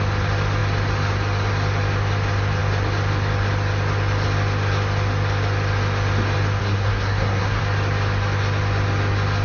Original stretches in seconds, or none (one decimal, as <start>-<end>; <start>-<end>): 0.0-6.6; 7.6-9.4